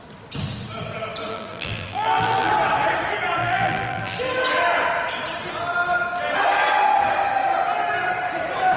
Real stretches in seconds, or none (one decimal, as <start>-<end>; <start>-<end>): 0.0-1.3; 2.5-3.4; 4.2-8.8